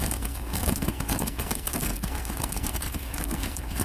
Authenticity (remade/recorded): remade